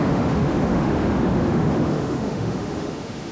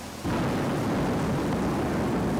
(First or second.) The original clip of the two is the second